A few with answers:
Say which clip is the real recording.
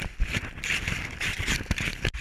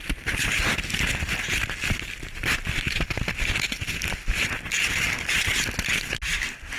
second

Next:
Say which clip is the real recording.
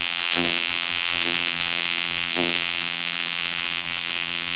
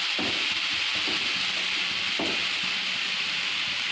second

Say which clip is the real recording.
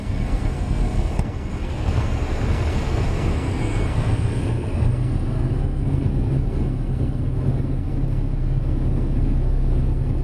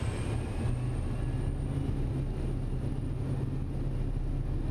second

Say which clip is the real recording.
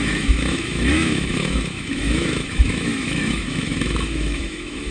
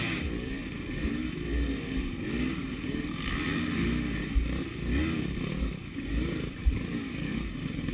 second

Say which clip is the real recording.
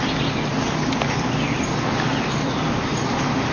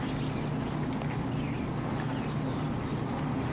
second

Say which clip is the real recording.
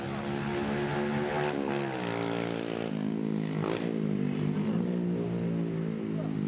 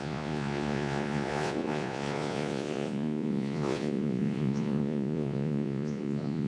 first